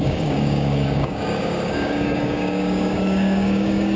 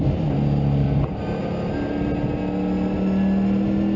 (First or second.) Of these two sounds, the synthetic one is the first